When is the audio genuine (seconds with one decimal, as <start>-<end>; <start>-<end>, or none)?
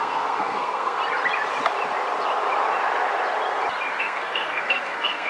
1.0-4.0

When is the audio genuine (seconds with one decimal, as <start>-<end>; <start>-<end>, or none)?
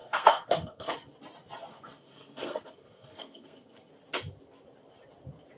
0.9-1.7; 3.9-5.6